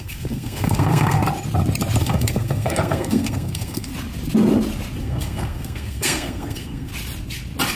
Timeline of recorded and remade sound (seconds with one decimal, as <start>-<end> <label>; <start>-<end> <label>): 0.0-1.2 remade; 1.2-2.0 recorded; 2.0-3.9 remade; 3.9-5.0 recorded; 5.0-6.9 remade; 6.9-7.8 recorded